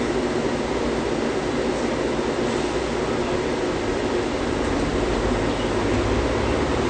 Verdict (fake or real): real